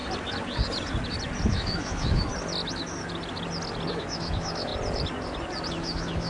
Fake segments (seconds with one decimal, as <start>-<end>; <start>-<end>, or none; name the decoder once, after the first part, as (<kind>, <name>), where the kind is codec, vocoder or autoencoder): 1.5-2.3 (autoencoder, DAC-VAE); 3.9-4.7; 5.7-6.3